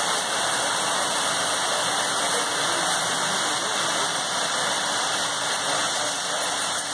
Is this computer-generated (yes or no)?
no